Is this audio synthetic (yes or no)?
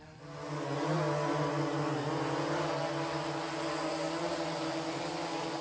no